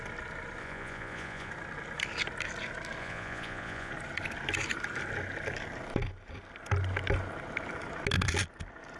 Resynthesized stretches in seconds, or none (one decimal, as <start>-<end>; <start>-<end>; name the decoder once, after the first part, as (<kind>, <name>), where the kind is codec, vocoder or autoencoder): 0.6-1.5 (vocoder, Vocos); 3.0-3.9